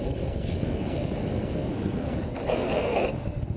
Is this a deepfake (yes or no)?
yes